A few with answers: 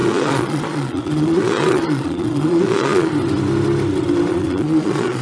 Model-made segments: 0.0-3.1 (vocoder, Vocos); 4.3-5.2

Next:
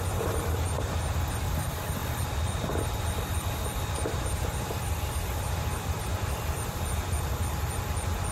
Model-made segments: none

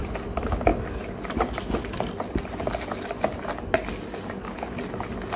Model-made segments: none

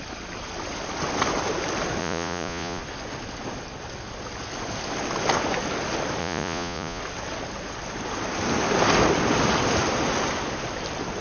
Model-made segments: 2.0-2.8 (vocoder, Vocos); 6.2-7.0

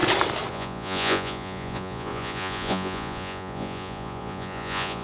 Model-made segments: 0.5-5.0 (vocoder, Vocos)